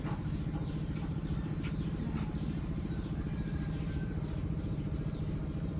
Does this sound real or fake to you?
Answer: fake